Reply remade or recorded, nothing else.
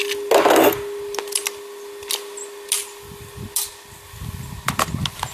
recorded